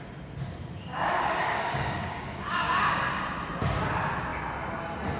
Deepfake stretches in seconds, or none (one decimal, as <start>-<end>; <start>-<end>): 0.8-3.0